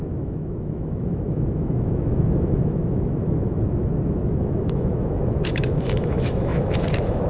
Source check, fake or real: fake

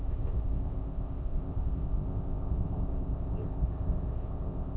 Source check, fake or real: fake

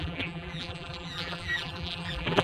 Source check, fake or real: fake